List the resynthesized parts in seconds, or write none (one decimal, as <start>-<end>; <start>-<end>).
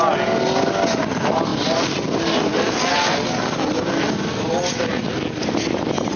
none